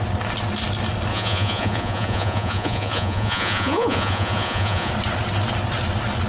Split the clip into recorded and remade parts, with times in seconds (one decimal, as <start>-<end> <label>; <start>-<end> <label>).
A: 0.0-1.1 recorded; 1.1-4.9 remade; 4.9-6.3 recorded